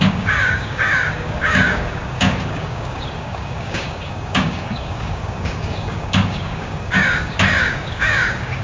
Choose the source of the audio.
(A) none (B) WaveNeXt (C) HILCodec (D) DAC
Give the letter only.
D